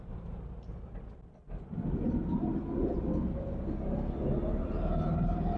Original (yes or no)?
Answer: yes